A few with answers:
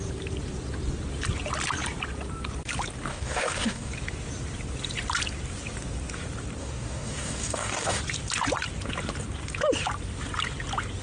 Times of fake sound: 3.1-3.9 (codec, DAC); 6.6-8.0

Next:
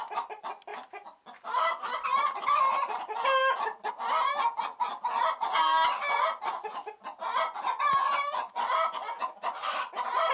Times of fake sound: none

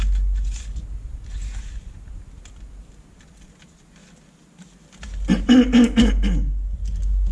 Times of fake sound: none

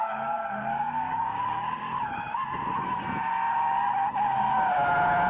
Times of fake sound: 0.0-1.8 (codec, DAC)

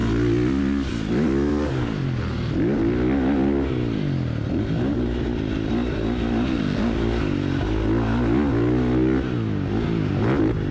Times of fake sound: 1.5-2.2 (codec, DAC)

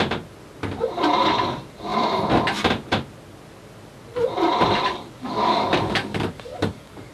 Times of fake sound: 4.8-7.1 (codec, DAC)

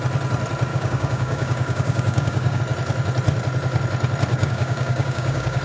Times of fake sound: 0.7-2.6 (codec, DAC); 4.3-5.6

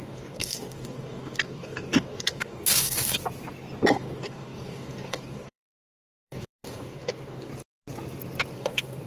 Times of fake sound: 0.0-3.2 (codec, DAC); 3.9-7.5; 8.5-9.1